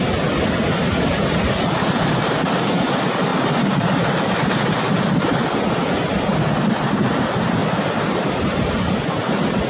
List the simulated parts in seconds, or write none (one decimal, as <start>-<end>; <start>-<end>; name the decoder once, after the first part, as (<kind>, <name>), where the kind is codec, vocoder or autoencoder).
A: none